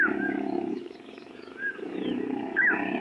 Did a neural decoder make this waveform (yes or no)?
yes